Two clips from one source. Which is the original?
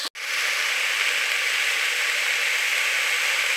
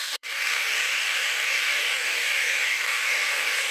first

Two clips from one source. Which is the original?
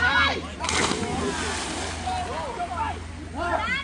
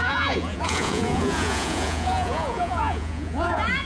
first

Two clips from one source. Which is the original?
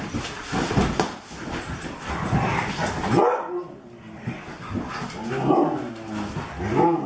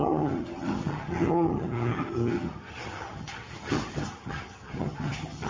first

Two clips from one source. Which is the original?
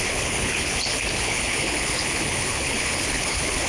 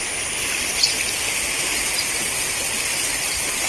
second